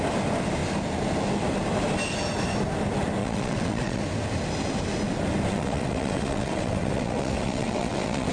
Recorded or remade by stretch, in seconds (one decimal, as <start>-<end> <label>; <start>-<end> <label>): 0.0-3.2 recorded; 3.2-4.0 remade; 4.0-5.5 recorded; 5.5-8.3 remade